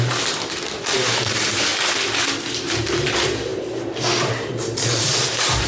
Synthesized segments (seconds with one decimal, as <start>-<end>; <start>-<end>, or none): 0.0-1.7; 2.2-5.7